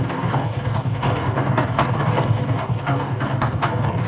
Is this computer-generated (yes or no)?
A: yes